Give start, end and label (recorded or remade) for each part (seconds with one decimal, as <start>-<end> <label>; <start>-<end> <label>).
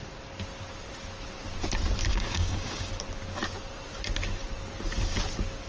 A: 0.0-2.1 recorded; 2.1-2.9 remade; 2.9-5.7 recorded